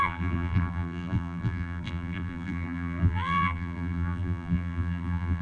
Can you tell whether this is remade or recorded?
remade